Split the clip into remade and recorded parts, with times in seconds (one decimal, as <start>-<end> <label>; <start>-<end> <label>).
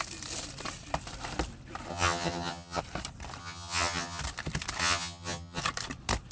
0.0-1.9 recorded; 1.9-2.8 remade; 2.8-3.4 recorded; 3.4-4.2 remade; 4.2-4.8 recorded; 4.8-5.6 remade; 5.6-6.3 recorded